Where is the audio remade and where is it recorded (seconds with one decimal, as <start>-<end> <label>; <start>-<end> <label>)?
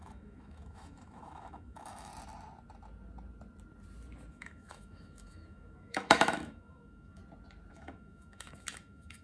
0.0-2.1 remade; 2.1-4.3 recorded; 4.3-7.2 remade; 7.2-7.7 recorded; 7.7-9.2 remade